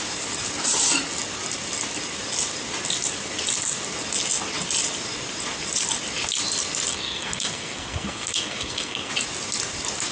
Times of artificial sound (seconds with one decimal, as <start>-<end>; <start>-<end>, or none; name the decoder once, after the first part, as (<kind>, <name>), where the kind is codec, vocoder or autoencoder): 6.9-9.1 (codec, SNAC)